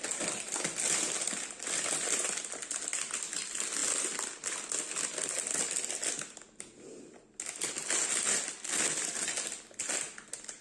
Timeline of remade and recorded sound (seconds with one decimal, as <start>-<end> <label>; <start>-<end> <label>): 0.0-10.6 recorded